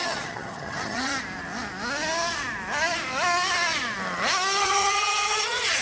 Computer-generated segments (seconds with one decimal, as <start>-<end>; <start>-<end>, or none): 0.0-1.1; 4.6-5.8